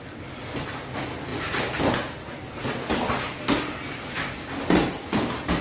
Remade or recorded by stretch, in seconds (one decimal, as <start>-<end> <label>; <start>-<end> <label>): 0.0-5.6 recorded